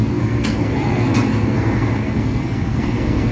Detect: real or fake fake